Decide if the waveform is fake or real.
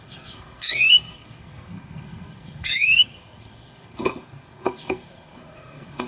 fake